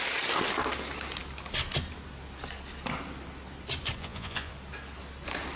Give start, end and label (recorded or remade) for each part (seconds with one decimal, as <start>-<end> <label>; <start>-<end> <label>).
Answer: 0.0-4.0 recorded; 4.0-4.5 remade; 4.5-5.6 recorded